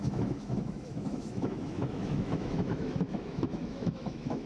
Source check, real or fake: fake